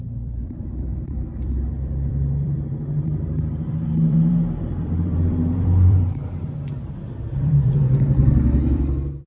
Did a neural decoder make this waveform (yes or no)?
yes